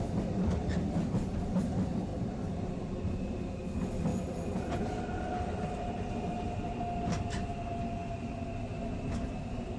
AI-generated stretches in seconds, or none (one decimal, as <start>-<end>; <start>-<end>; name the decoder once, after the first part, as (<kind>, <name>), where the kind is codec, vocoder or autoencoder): 4.1-6.7 (vocoder, BigVGAN v2)